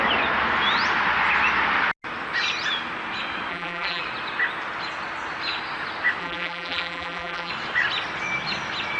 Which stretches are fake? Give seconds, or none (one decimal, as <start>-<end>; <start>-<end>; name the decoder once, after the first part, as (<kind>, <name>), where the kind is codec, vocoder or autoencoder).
3.5-4.0 (vocoder, BigVGAN v2); 6.2-7.5